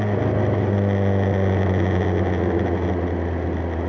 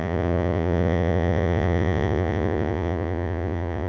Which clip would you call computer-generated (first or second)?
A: second